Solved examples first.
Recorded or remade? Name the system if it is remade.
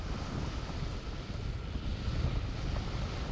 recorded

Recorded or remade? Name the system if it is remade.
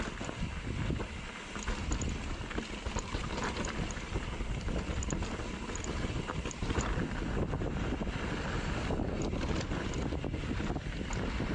recorded